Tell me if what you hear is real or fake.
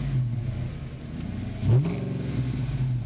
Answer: real